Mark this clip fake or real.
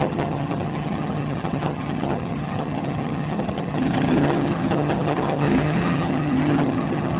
fake